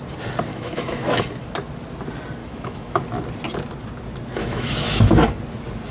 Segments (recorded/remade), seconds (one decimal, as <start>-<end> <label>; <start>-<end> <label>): 0.0-0.5 recorded; 0.5-1.2 remade; 1.2-2.4 recorded; 2.4-3.0 remade; 3.0-4.4 recorded; 4.4-5.1 remade; 5.1-5.9 recorded